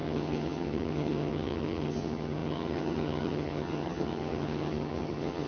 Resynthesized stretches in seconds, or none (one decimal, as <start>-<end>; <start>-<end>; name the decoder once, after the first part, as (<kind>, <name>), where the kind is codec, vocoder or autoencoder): 0.0-5.5 (vocoder, HiFi-GAN)

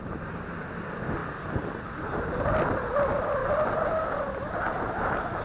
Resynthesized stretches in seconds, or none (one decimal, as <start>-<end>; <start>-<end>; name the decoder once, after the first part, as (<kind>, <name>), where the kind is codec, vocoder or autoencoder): none

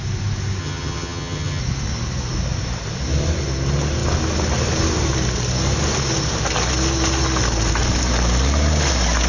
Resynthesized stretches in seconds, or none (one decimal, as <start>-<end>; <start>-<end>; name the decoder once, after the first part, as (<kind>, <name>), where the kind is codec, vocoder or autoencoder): 0.6-1.6 (vocoder, HiFi-GAN)